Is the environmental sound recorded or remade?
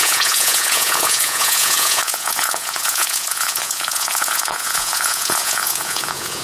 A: remade